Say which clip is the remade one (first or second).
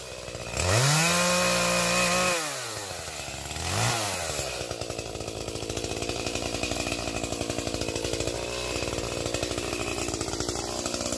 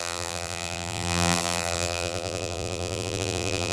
second